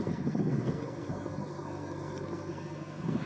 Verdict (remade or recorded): remade